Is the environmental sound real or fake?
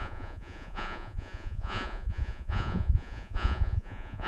fake